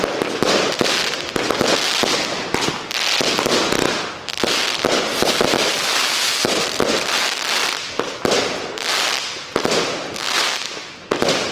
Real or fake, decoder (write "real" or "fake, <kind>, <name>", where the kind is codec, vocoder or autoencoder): real